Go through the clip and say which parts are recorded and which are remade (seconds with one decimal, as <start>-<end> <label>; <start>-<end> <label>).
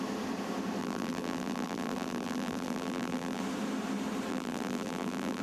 0.0-0.8 recorded; 0.8-3.4 remade; 3.4-4.3 recorded; 4.3-5.4 remade